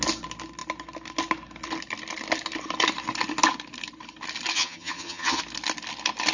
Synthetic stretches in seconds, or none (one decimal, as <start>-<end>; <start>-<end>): 4.5-5.4